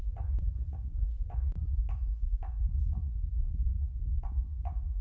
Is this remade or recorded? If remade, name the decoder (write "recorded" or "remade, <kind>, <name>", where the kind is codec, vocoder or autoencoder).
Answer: remade, vocoder, Vocos